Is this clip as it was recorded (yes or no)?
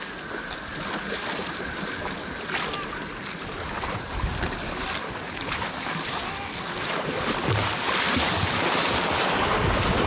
yes